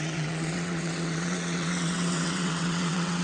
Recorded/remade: remade